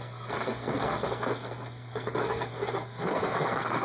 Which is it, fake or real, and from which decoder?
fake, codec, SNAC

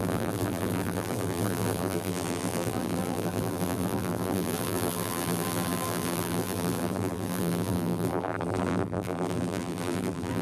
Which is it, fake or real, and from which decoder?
fake, vocoder, BigVGAN v2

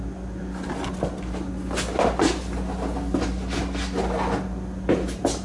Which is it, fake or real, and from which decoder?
real